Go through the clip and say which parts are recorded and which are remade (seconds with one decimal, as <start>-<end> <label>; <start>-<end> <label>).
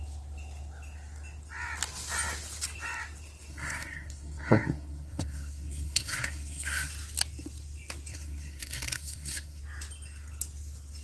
0.0-3.5 recorded; 3.5-6.9 remade; 6.9-8.1 recorded; 8.1-9.6 remade; 9.6-11.0 recorded